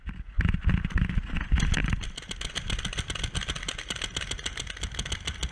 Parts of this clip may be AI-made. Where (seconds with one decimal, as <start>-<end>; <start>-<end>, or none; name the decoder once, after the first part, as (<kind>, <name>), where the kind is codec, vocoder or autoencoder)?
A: 1.8-2.5 (vocoder, BigVGAN v2)